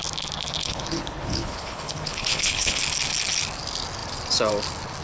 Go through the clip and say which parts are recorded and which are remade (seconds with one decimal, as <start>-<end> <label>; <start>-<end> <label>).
0.0-0.6 recorded; 0.6-2.8 remade; 2.8-5.0 recorded